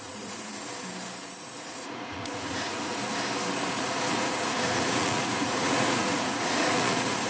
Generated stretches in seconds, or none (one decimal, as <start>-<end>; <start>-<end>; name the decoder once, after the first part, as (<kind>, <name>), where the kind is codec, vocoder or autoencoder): 0.0-0.5 (vocoder, Vocos); 1.4-3.0; 3.7-7.3